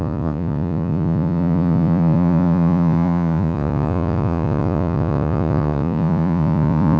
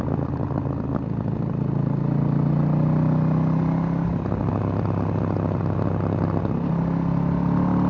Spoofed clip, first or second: first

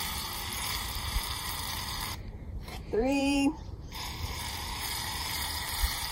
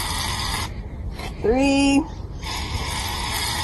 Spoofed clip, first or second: first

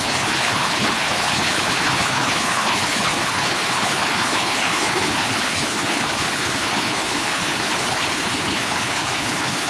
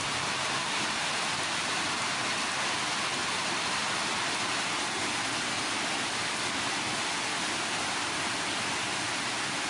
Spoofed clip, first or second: first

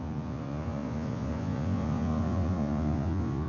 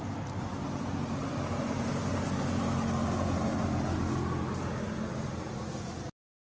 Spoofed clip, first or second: first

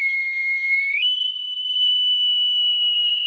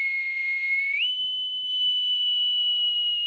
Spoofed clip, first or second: first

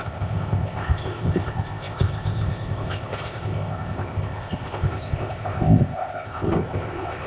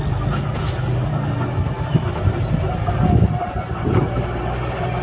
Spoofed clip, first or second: first